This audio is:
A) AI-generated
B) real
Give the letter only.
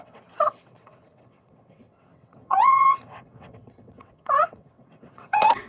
A